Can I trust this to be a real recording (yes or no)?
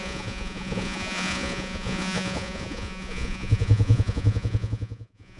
no